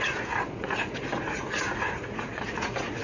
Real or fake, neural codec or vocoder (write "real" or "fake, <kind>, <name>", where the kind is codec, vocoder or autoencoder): fake, vocoder, Vocos